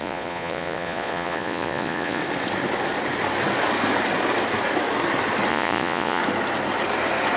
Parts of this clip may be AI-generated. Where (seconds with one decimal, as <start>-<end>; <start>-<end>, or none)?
0.0-2.2; 5.5-6.2